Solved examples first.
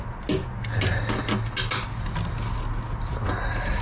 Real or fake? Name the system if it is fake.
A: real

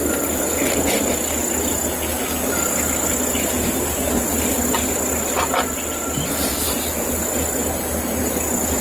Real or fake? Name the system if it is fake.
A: real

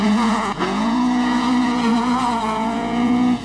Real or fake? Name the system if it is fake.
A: fake, vocoder, Vocos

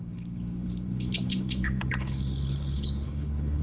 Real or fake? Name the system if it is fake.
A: fake, codec, HILCodec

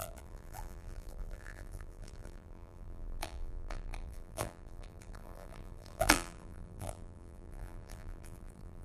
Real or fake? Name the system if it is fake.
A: fake, vocoder, BigVGAN v2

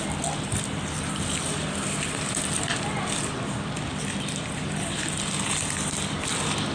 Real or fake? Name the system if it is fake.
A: real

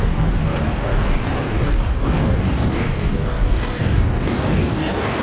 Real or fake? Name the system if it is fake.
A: fake, codec, DAC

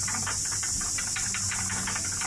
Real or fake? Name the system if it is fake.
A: real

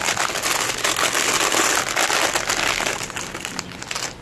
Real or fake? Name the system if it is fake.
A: real